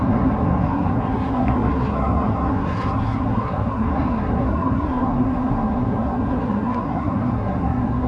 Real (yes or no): no